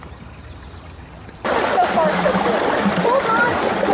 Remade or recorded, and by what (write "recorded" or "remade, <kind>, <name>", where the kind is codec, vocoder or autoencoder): recorded